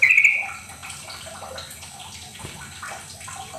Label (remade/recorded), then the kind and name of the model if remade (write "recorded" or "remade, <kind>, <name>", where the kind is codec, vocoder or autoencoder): recorded